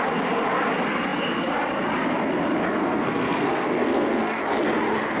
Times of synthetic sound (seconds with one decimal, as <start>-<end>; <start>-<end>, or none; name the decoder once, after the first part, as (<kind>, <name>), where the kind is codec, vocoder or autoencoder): 2.8-4.4 (codec, SNAC)